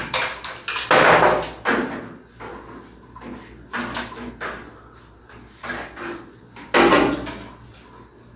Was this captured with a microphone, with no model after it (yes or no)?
yes